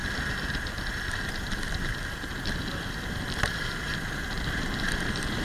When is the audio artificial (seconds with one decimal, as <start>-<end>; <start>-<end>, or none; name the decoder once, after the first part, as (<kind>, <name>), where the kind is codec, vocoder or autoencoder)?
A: 0.7-5.4 (vocoder, BigVGAN v2)